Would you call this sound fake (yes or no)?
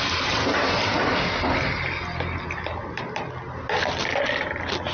no